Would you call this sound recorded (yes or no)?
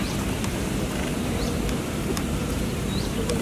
yes